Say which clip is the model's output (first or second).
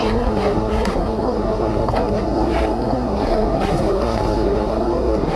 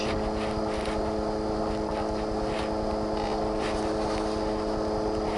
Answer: first